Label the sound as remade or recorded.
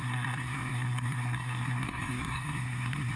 remade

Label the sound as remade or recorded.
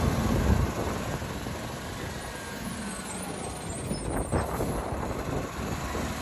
recorded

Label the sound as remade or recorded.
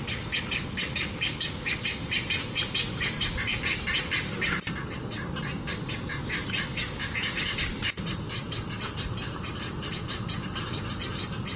recorded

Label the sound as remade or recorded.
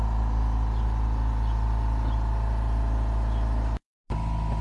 recorded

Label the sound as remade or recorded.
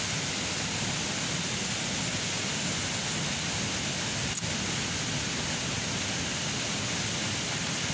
recorded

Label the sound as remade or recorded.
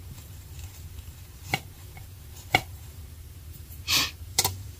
remade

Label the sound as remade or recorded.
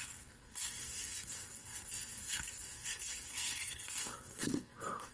remade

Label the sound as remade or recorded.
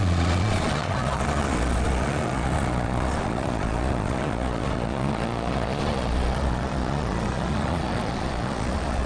remade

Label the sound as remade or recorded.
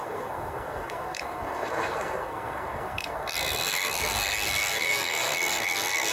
remade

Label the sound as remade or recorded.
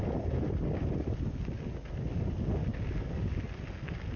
recorded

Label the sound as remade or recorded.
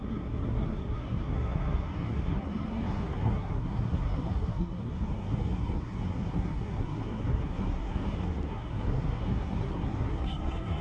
remade